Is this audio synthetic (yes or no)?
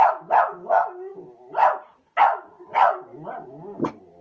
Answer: no